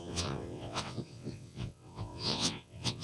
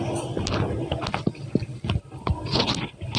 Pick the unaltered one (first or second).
second